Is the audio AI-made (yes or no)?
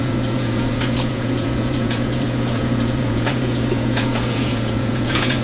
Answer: yes